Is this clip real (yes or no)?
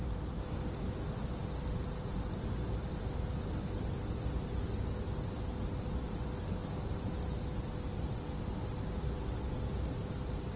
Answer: yes